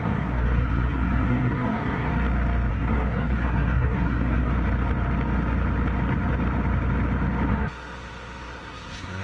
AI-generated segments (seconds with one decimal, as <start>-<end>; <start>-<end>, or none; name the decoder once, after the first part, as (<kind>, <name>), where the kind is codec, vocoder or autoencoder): 0.0-2.1 (codec, SNAC); 2.7-4.5; 7.5-9.2